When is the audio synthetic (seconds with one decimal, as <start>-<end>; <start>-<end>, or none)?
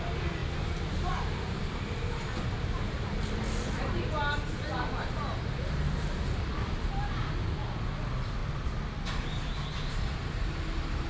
none